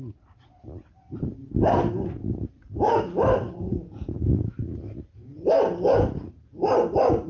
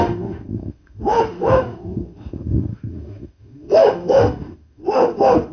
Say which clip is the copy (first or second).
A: second